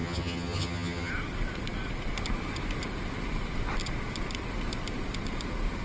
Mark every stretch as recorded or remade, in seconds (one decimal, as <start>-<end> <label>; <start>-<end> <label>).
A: 0.0-1.1 remade; 1.1-5.8 recorded